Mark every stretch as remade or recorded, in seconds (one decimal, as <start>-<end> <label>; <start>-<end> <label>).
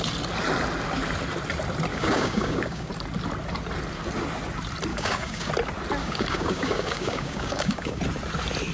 0.0-1.9 recorded; 1.9-2.9 remade; 2.9-4.9 recorded; 4.9-5.5 remade; 5.5-6.0 recorded; 6.0-8.0 remade; 8.0-8.7 recorded